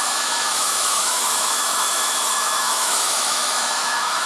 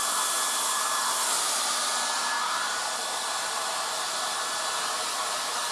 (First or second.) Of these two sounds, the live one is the second